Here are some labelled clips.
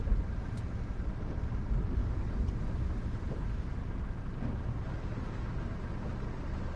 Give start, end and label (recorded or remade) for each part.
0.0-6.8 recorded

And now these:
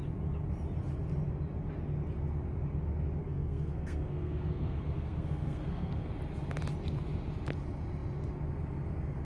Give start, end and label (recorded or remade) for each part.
0.0-3.2 recorded; 3.2-6.1 remade; 6.1-9.2 recorded

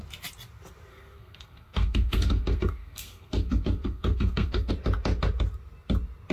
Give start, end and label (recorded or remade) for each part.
0.0-0.9 recorded; 0.9-4.7 remade; 4.7-6.3 recorded

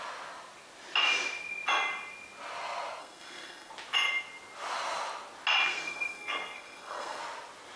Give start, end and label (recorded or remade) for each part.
0.0-3.0 recorded; 3.0-3.7 remade; 3.7-5.7 recorded; 5.7-7.2 remade; 7.2-7.8 recorded

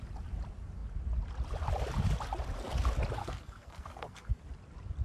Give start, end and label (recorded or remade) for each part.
0.0-3.2 recorded; 3.2-4.4 remade; 4.4-5.0 recorded

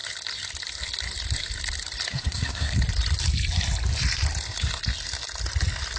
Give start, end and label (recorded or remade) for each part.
0.0-2.1 recorded; 2.1-2.7 remade; 2.7-6.0 recorded

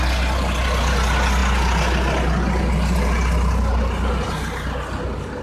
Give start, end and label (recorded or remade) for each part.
0.0-5.4 recorded

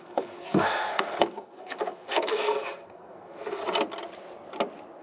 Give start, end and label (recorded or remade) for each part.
0.0-3.6 remade; 3.6-5.0 recorded